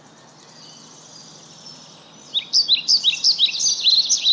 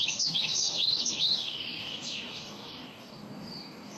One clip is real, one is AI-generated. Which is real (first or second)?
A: first